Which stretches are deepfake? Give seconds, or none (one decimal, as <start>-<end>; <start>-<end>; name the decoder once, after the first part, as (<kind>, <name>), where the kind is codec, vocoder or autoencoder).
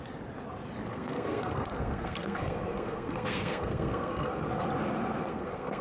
0.9-4.4 (codec, SNAC); 5.3-5.8